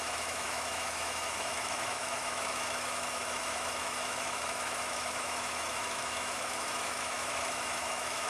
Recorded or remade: remade